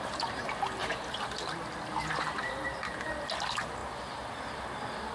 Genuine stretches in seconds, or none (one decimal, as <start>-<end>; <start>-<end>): 0.0-5.1